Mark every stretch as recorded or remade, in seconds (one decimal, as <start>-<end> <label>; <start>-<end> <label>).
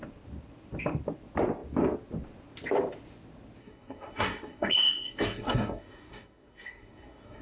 0.0-3.6 recorded; 3.6-7.4 remade